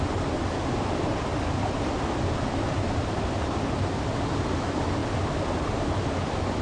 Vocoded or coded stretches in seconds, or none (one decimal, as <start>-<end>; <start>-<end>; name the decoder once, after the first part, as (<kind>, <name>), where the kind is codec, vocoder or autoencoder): none